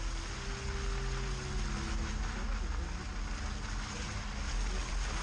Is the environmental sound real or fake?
real